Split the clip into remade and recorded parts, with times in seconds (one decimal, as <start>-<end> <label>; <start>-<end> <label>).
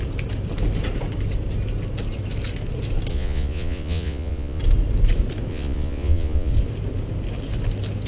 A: 0.0-3.1 recorded; 3.1-4.6 remade; 4.6-5.5 recorded; 5.5-6.5 remade; 6.5-8.1 recorded